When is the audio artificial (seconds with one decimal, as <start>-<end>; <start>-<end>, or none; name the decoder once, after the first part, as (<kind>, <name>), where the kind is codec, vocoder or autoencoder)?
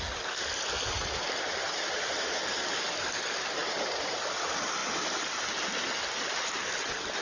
1.6-2.2 (vocoder, BigVGAN v2); 3.6-4.1